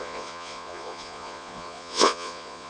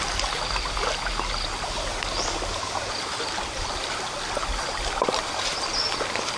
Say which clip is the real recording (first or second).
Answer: second